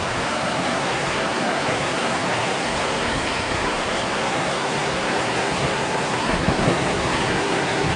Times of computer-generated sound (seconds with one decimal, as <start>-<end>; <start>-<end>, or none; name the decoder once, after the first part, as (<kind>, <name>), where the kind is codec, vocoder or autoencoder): 0.0-8.0 (codec, SNAC)